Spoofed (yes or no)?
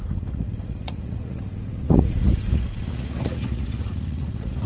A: yes